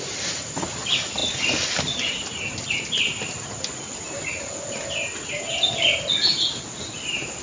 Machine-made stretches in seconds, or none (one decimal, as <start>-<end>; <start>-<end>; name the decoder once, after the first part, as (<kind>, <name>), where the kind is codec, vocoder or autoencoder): none